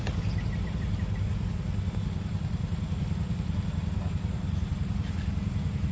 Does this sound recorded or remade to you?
recorded